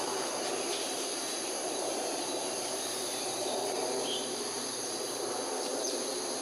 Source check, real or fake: fake